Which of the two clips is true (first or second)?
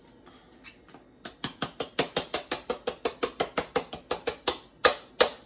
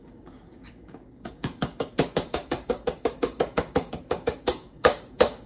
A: first